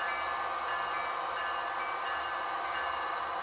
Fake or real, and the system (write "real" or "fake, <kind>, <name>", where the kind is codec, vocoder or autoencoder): real